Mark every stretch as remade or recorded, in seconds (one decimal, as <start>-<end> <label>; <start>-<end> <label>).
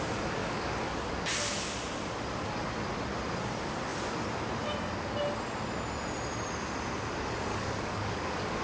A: 0.0-0.4 recorded; 0.4-1.1 remade; 1.1-7.5 recorded; 7.5-8.6 remade